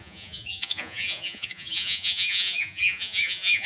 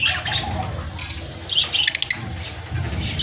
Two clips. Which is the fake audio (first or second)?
first